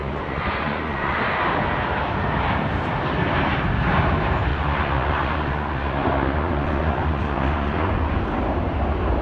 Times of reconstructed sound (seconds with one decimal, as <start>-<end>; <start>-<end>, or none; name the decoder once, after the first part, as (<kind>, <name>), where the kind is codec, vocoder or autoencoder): 0.0-1.2 (vocoder, Vocos); 4.5-8.2